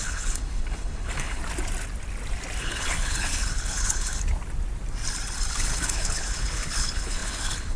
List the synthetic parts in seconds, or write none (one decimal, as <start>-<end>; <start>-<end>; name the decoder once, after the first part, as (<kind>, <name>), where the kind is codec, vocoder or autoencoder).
0.0-1.4 (codec, HILCodec); 2.6-4.1; 5.5-7.8